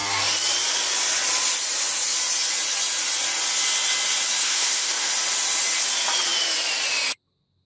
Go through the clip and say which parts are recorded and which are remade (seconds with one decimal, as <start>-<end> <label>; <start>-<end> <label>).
0.0-4.4 recorded; 4.4-5.1 remade; 5.1-7.7 recorded